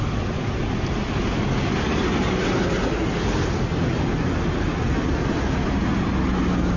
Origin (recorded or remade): recorded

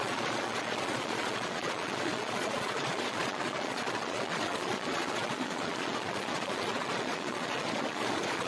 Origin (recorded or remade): remade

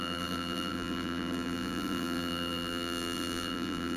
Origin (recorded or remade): remade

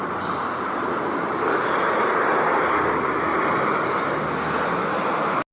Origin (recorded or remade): recorded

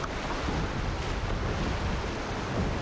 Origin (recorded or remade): recorded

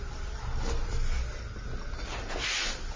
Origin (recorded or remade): recorded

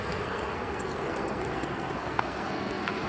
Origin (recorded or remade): remade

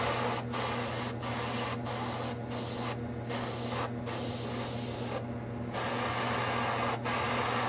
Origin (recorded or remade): recorded